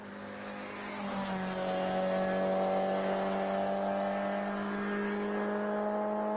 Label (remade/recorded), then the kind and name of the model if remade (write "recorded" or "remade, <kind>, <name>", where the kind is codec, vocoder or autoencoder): recorded